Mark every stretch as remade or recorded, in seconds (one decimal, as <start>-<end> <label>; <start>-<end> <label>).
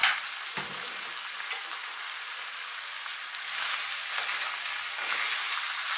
0.0-6.0 recorded